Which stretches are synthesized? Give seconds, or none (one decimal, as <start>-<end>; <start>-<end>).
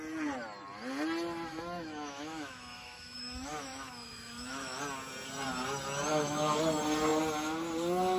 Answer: 1.5-4.8; 6.1-6.6